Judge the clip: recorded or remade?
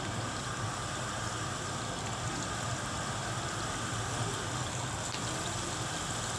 recorded